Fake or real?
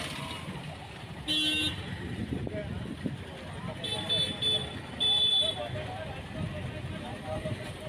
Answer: real